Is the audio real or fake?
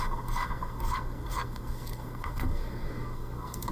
fake